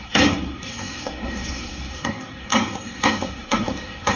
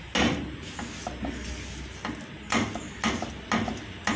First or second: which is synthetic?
first